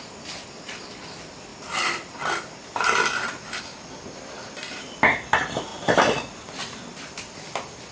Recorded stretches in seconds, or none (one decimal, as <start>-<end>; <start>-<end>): 0.0-1.5; 3.6-5.7